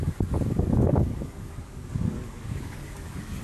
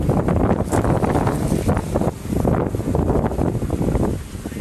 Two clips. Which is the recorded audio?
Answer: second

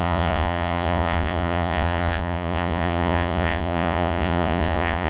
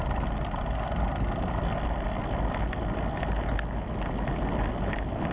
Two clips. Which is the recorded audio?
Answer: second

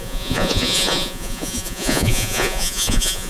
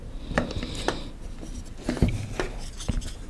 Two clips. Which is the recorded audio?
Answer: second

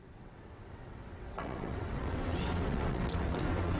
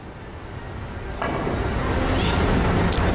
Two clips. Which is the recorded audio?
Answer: second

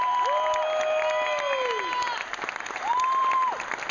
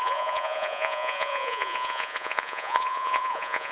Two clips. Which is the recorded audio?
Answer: first